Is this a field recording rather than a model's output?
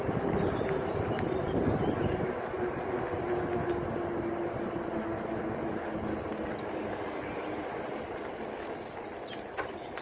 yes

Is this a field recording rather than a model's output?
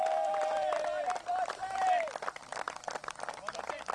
no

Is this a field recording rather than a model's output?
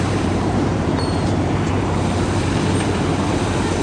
no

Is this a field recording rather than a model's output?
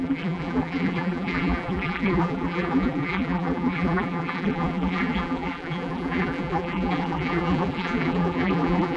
no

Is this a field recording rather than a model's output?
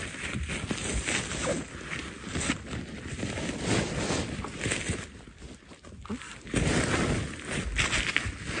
yes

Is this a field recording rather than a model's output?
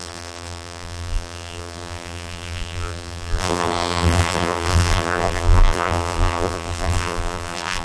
no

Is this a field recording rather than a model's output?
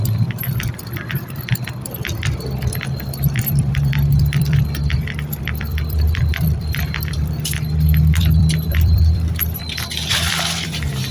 no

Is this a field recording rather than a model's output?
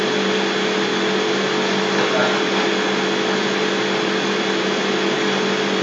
yes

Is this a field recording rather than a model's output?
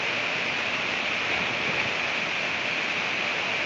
yes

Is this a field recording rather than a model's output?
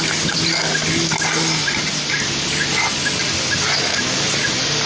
yes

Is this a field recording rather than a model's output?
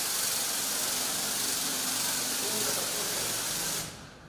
yes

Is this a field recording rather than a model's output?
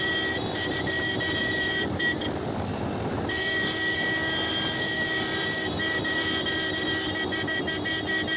no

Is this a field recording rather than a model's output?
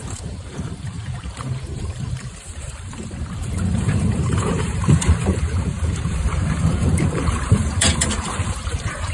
no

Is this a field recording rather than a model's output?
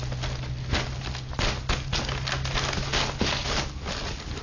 yes